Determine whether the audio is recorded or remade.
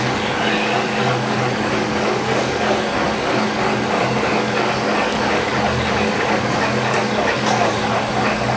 remade